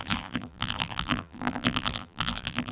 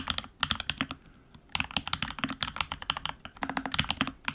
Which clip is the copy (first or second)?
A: first